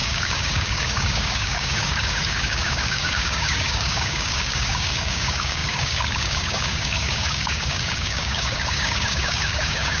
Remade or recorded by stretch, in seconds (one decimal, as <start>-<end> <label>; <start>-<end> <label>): 0.0-10.0 remade